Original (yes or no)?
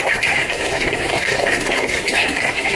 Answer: no